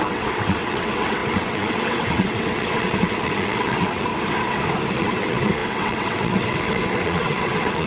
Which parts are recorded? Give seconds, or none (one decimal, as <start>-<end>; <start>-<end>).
4.1-4.9